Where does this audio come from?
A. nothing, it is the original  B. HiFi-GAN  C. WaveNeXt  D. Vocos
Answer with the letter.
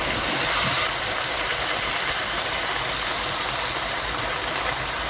A